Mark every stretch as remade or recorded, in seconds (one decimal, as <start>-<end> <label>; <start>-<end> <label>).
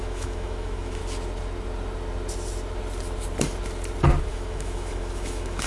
0.0-1.0 remade; 1.0-4.2 recorded; 4.2-5.7 remade